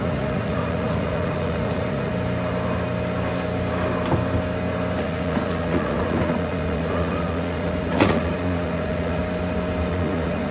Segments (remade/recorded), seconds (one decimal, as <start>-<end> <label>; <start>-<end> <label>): 0.0-2.1 remade; 2.1-5.0 recorded; 5.0-9.2 remade; 9.2-9.9 recorded; 9.9-10.5 remade